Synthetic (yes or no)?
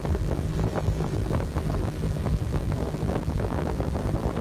yes